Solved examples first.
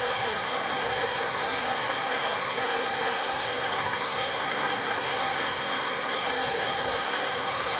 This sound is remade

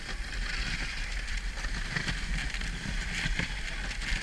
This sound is recorded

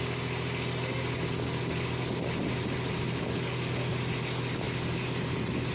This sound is recorded